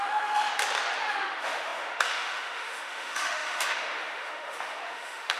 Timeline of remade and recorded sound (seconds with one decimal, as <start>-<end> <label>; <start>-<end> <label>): 0.0-0.5 remade; 0.5-1.1 recorded; 1.1-5.4 remade